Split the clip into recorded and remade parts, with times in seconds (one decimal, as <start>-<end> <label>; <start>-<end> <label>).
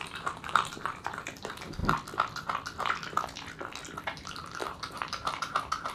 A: 0.0-1.8 remade; 1.8-4.0 recorded; 4.0-5.9 remade